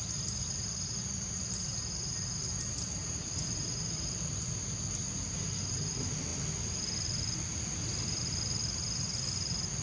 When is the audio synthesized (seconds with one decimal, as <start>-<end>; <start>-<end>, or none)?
0.4-1.3; 3.0-3.8